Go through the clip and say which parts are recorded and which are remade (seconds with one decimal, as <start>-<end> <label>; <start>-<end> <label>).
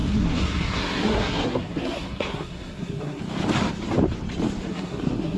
0.0-3.2 remade; 3.2-4.7 recorded; 4.7-5.4 remade